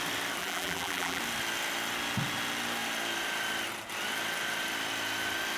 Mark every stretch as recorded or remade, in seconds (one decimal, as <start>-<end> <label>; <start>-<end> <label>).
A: 0.0-0.4 recorded; 0.4-1.2 remade; 1.2-5.6 recorded